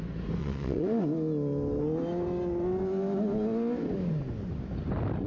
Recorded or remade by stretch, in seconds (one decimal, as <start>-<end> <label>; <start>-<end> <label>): 0.0-0.4 recorded; 0.4-1.0 remade; 1.0-5.3 recorded